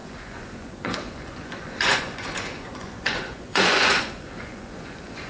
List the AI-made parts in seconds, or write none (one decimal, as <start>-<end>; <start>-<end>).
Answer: 0.0-5.3